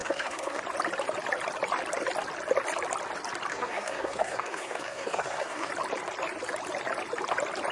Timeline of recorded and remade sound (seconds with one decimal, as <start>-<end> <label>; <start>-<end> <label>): 0.0-0.6 remade; 0.6-3.5 recorded; 3.5-5.7 remade; 5.7-7.7 recorded

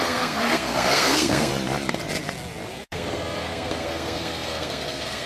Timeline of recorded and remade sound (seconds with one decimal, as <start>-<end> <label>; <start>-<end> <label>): 0.0-1.5 remade; 1.5-2.7 recorded; 2.7-5.3 remade